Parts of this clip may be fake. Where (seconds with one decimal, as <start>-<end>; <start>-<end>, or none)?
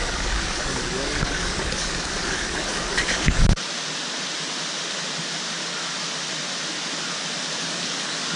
0.0-3.4; 7.6-8.4